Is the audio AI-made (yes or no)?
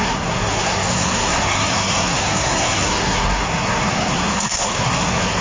yes